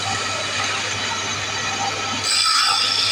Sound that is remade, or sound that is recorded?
recorded